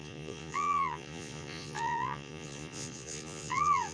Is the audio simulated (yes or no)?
yes